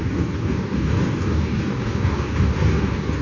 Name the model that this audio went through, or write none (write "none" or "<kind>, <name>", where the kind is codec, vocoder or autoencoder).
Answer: codec, DAC